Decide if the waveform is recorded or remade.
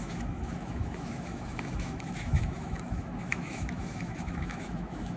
remade